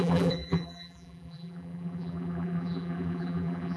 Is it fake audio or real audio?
fake